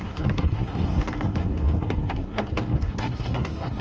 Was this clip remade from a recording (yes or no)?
yes